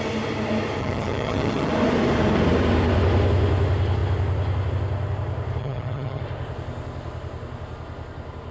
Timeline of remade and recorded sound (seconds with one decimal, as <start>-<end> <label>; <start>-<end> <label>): 0.0-0.8 recorded; 0.8-1.7 remade; 1.7-5.6 recorded; 5.6-6.2 remade; 6.2-8.5 recorded